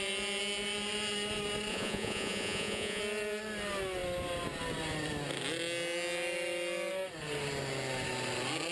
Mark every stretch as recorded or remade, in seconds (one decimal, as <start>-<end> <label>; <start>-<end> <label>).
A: 0.0-1.7 recorded; 1.7-3.0 remade; 3.0-8.7 recorded